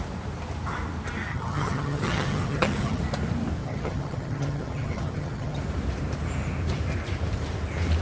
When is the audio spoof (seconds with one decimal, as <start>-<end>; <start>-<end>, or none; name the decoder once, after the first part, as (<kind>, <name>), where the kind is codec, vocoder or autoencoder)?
1.3-3.0 (vocoder, HiFi-GAN); 3.6-5.6